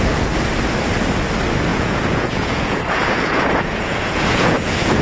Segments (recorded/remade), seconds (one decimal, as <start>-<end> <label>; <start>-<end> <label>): 0.0-1.7 recorded; 1.7-5.0 remade